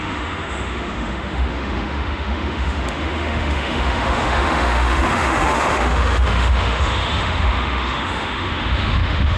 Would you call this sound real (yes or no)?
no